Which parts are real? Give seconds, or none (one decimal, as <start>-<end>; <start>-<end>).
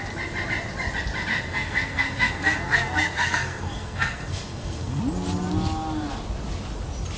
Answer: 0.0-1.3; 5.0-7.2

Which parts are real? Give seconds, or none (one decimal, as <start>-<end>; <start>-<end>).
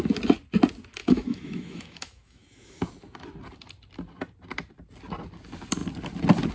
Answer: 0.0-1.0; 2.8-6.5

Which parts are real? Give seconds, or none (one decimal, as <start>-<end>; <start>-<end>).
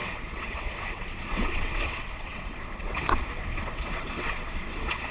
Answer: none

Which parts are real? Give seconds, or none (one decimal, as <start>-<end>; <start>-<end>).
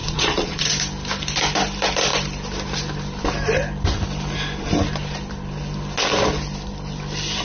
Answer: 0.7-7.4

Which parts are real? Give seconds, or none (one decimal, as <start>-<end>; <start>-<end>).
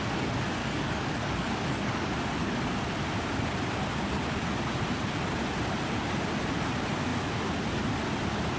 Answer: 0.0-0.6; 2.1-8.6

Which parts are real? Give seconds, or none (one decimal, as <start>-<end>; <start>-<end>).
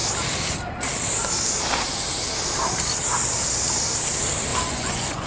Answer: 0.0-4.5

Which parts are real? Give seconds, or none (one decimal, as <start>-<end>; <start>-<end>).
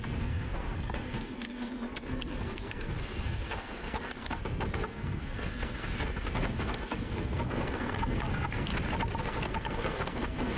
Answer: 8.7-9.2